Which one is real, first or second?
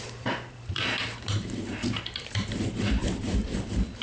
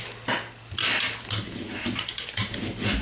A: second